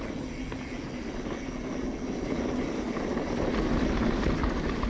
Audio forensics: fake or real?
real